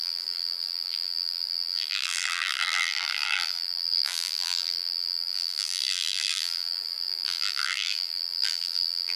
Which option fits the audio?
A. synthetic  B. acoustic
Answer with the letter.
A